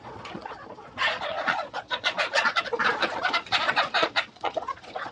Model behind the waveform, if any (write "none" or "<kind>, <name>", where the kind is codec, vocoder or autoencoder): vocoder, Vocos